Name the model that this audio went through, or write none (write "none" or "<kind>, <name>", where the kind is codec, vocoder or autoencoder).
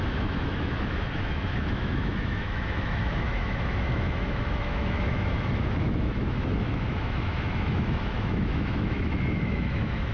autoencoder, DAC-VAE